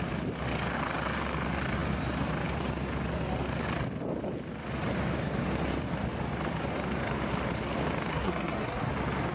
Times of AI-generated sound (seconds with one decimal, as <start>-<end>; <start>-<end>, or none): 8.1-8.9